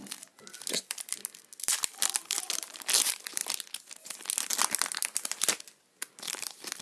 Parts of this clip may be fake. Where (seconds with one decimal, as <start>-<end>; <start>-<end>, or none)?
none